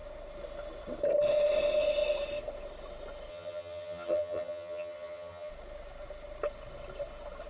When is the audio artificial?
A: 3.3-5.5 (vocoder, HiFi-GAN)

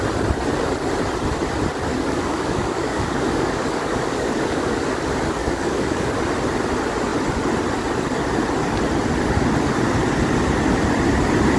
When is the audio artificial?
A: 1.9-5.0 (codec, DAC); 5.4-6.1

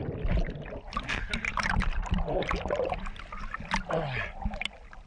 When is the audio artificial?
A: none

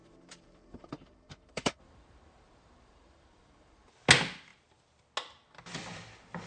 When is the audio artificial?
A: 0.0-3.9 (vocoder, BigVGAN v2)